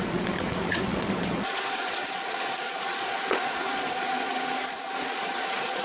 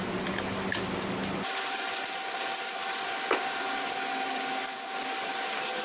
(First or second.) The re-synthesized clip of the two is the first